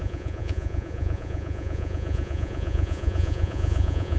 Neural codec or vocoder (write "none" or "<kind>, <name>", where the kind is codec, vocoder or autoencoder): vocoder, Vocos